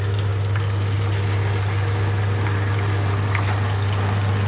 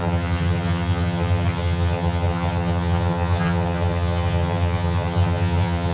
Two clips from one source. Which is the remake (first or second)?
second